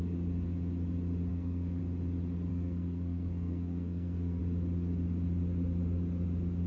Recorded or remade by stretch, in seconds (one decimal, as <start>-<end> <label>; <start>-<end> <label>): 0.0-1.3 recorded; 1.3-1.8 remade; 1.8-2.5 recorded; 2.5-4.4 remade; 4.4-6.7 recorded